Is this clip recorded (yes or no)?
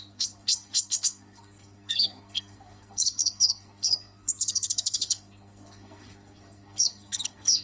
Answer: no